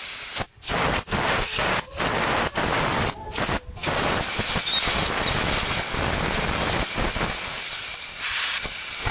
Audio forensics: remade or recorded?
recorded